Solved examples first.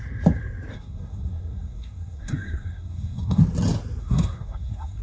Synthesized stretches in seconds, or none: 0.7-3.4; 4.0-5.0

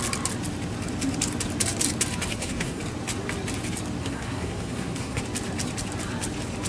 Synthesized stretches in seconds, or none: 2.3-2.8; 4.0-5.2

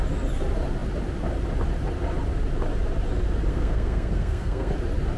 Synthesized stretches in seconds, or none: 3.5-4.7

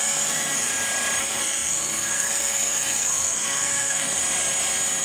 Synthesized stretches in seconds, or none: 0.0-0.7; 1.2-4.2

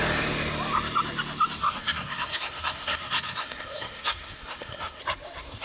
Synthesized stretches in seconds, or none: 1.6-5.0

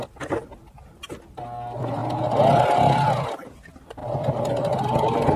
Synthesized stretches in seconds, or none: none